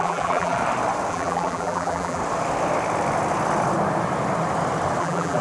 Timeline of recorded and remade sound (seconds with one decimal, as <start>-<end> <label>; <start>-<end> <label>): 0.0-0.6 remade; 0.6-1.1 recorded; 1.1-2.2 remade; 2.2-5.0 recorded; 5.0-5.4 remade